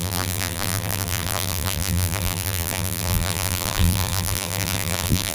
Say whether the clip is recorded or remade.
remade